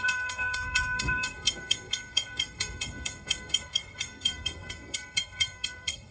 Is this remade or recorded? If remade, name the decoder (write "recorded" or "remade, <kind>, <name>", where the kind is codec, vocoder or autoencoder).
remade, codec, SNAC